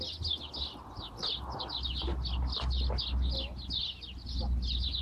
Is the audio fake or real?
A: real